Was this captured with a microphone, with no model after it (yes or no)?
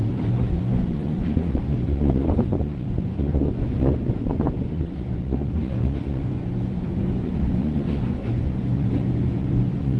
no